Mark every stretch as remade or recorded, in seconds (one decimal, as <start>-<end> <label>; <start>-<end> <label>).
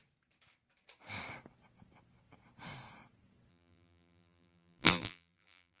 0.0-3.5 recorded; 3.5-5.8 remade